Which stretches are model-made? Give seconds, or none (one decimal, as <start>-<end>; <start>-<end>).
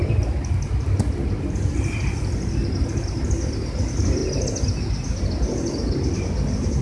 none